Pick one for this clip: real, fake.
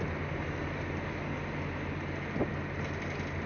real